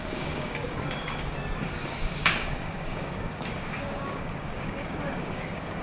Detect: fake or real fake